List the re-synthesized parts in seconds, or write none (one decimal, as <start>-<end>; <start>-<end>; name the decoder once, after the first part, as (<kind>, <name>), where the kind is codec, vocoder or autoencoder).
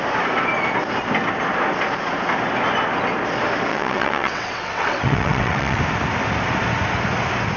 3.7-5.8 (vocoder, WaveNeXt)